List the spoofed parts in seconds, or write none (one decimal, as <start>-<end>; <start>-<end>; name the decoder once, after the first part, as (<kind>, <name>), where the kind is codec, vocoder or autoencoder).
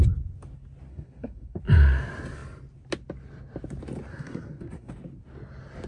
0.9-1.6 (codec, SNAC); 4.1-4.9